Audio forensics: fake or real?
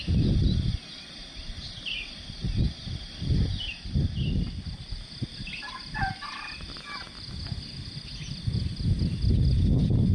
real